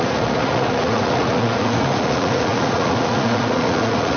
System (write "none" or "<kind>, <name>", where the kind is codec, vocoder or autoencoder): vocoder, Vocos